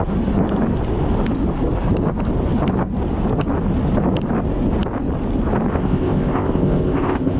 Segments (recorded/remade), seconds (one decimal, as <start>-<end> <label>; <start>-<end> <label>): 0.0-5.7 recorded; 5.7-7.4 remade